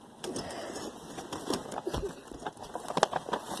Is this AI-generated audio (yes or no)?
no